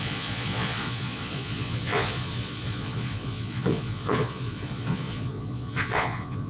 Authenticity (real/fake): fake